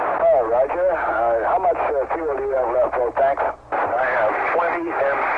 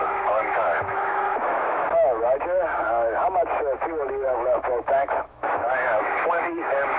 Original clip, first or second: first